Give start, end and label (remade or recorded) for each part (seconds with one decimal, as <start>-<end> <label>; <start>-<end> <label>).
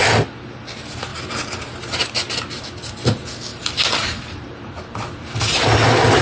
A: 0.0-1.1 recorded; 1.1-2.0 remade; 2.0-3.5 recorded; 3.5-4.8 remade; 4.8-6.2 recorded